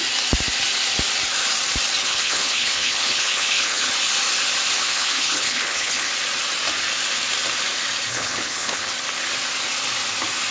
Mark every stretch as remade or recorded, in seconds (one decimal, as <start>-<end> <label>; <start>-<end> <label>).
0.0-2.0 recorded; 2.0-3.9 remade; 3.9-4.8 recorded; 4.8-6.1 remade; 6.1-8.1 recorded; 8.1-8.9 remade; 8.9-10.5 recorded